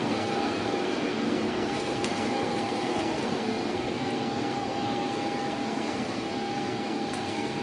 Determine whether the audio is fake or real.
fake